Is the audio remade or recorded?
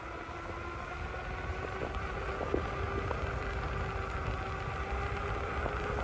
recorded